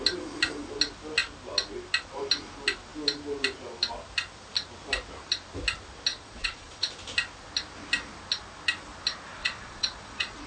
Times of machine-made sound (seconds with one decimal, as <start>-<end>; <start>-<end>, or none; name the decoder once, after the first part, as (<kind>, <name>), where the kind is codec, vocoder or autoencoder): 6.1-6.9 (vocoder, Vocos); 9.4-10.5